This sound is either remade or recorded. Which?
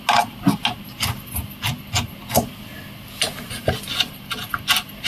recorded